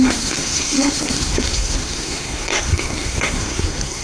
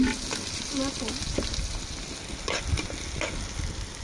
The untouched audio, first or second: second